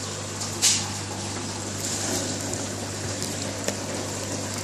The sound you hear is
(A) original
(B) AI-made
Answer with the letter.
A